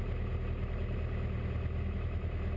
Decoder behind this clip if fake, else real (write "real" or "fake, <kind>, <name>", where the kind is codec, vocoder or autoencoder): real